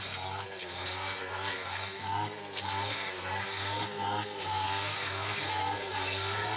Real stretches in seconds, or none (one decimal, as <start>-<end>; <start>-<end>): none